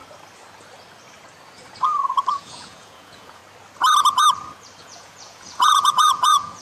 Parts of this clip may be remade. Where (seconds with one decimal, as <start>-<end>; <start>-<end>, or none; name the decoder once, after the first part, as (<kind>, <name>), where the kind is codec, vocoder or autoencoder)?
2.3-3.4 (vocoder, Vocos); 4.8-6.6